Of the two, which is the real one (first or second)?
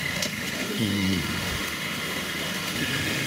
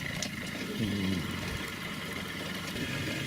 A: second